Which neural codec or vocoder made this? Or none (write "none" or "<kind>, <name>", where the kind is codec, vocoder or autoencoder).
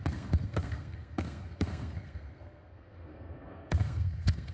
codec, SNAC